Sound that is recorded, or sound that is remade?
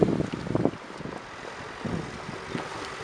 recorded